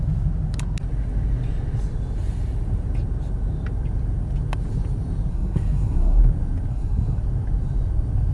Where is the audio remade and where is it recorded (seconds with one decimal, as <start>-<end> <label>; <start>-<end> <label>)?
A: 0.0-5.3 recorded; 5.3-6.2 remade; 6.2-6.7 recorded; 6.7-7.2 remade; 7.2-8.3 recorded